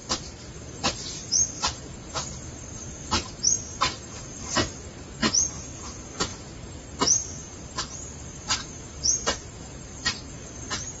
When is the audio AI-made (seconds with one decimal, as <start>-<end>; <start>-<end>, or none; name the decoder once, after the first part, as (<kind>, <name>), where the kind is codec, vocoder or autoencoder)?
0.0-5.0 (vocoder, BigVGAN v2); 6.3-11.0